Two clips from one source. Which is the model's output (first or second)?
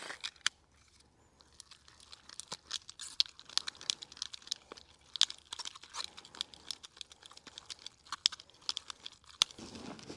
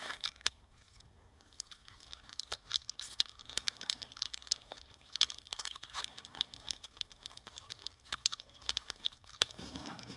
second